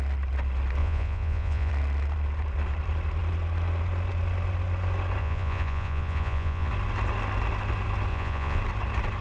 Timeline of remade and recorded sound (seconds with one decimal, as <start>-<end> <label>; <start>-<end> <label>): 0.0-0.8 recorded; 0.8-1.7 remade; 1.7-5.2 recorded; 5.2-6.7 remade; 6.7-8.1 recorded; 8.1-8.6 remade; 8.6-9.2 recorded